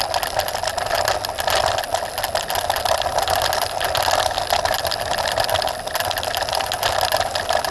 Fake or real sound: real